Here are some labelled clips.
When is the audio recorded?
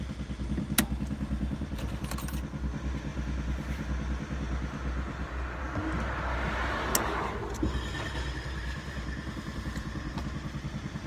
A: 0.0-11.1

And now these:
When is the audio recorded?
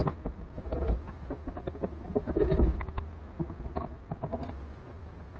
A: 0.0-4.3; 4.9-5.4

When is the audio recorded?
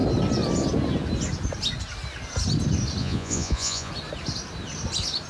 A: 0.0-3.0; 3.9-5.3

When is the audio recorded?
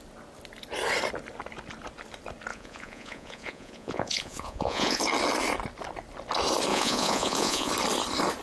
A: 0.0-2.5; 5.0-6.7; 7.7-8.4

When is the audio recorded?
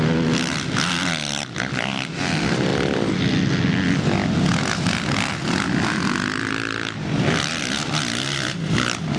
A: 0.0-9.2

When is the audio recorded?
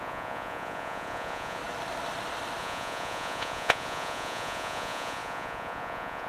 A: 1.6-2.6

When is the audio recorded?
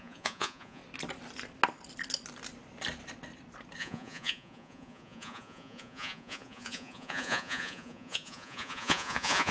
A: 0.8-3.8